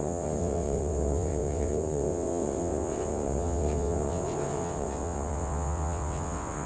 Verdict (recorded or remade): remade